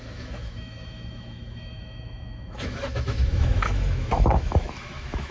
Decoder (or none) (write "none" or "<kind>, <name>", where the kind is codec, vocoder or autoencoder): autoencoder, DAC-VAE